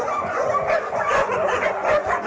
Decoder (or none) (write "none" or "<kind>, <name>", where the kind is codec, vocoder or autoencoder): vocoder, Vocos